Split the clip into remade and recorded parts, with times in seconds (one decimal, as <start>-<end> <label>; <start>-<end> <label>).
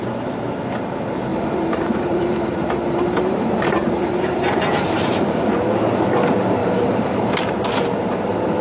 0.0-1.3 recorded; 1.3-5.5 remade; 5.5-6.6 recorded; 6.6-7.5 remade; 7.5-8.6 recorded